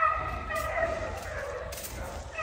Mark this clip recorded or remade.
recorded